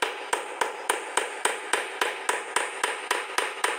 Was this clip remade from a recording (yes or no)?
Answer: no